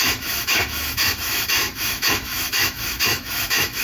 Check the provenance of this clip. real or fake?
fake